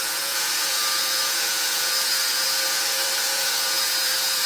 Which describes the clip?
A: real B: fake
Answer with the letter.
B